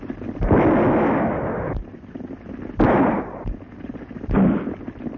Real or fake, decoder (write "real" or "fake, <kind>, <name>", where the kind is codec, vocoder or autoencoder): real